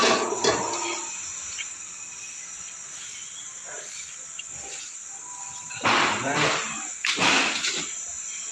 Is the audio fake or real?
real